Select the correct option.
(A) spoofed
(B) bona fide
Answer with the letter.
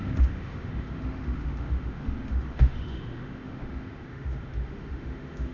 A